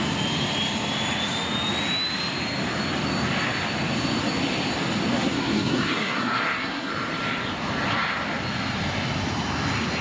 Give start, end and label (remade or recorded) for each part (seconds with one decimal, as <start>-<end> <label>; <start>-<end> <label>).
0.0-5.2 recorded; 5.2-6.9 remade; 6.9-10.0 recorded